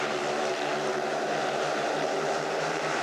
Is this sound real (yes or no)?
no